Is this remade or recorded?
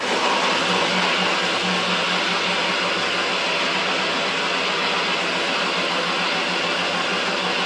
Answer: recorded